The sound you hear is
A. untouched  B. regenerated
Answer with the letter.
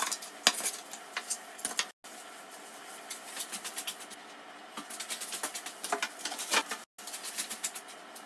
A